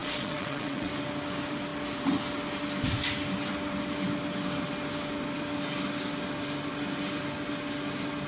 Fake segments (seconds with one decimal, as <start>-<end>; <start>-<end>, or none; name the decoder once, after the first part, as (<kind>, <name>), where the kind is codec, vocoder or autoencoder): 0.0-0.9 (vocoder, Vocos)